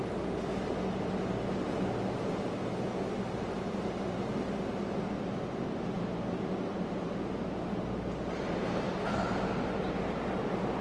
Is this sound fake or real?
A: real